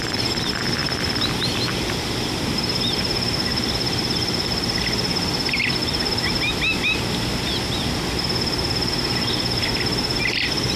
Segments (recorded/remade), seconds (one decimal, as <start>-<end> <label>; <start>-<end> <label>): 0.0-10.8 recorded